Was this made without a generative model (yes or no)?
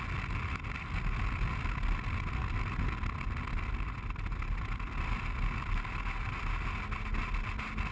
yes